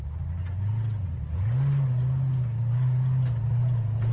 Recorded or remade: recorded